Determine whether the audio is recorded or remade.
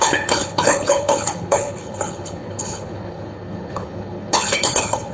remade